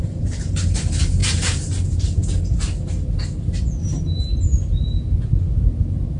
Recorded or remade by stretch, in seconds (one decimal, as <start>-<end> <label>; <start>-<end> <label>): 0.0-2.2 remade; 2.2-6.2 recorded